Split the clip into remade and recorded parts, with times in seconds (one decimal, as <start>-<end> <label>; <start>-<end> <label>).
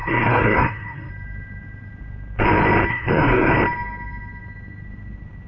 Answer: 0.0-1.1 remade; 1.1-2.9 recorded; 2.9-3.5 remade; 3.5-5.5 recorded